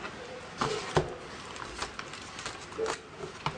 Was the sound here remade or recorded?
recorded